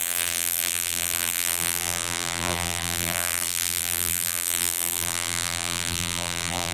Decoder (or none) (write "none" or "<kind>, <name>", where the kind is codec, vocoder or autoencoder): vocoder, BigVGAN v2